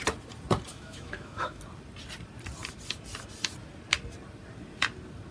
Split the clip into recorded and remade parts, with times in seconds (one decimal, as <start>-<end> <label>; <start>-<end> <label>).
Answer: 0.0-0.7 recorded; 0.7-1.6 remade; 1.6-5.3 recorded